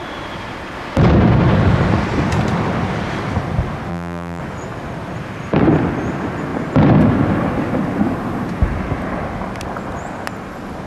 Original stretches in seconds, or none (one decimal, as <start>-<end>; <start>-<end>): 0.0-3.9; 4.4-10.9